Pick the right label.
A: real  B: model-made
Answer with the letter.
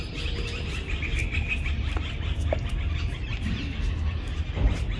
A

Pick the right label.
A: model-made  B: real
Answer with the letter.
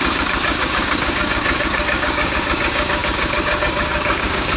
A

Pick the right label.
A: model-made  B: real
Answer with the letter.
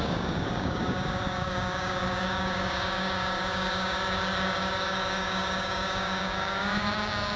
A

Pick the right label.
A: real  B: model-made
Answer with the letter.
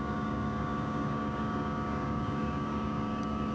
B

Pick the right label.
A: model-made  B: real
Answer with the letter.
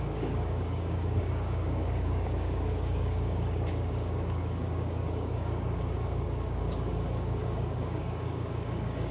A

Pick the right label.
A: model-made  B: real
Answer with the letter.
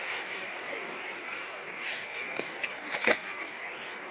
A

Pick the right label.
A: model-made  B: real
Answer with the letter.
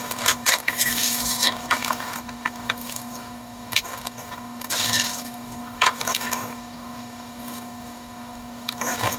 A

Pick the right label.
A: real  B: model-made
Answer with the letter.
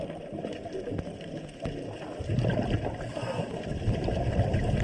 A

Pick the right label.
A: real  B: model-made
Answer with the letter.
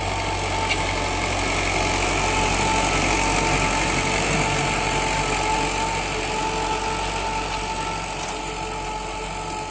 A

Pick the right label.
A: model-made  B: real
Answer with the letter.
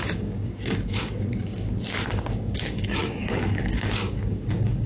A